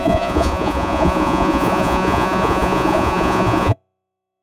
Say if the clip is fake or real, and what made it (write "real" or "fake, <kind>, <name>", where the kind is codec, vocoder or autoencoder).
fake, vocoder, Vocos